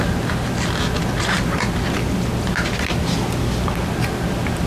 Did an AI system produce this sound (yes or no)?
no